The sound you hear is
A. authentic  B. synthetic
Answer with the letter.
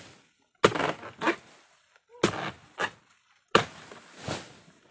A